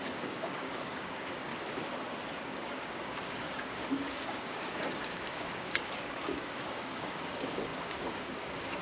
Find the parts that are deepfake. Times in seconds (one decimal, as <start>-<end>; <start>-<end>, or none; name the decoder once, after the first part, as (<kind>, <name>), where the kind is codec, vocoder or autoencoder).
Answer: 0.0-1.5 (codec, DAC); 2.4-8.8